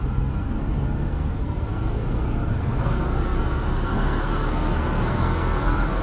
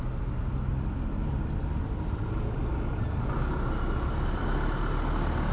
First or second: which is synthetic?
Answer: first